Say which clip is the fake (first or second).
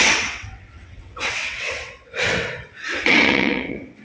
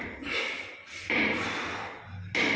first